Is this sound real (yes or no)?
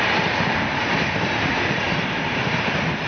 yes